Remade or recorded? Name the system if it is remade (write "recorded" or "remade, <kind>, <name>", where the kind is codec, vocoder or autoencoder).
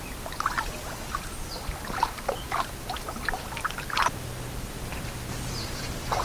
recorded